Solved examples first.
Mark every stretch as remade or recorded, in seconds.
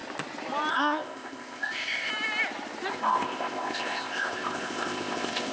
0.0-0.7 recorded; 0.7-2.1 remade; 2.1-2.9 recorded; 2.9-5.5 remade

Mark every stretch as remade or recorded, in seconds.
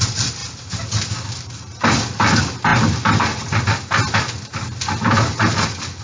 0.0-6.0 recorded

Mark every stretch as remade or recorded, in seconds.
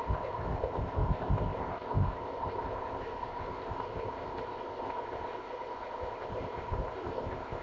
0.0-7.6 remade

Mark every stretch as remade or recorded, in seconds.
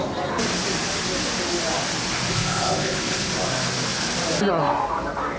0.0-2.3 recorded; 2.3-3.3 remade; 3.3-5.4 recorded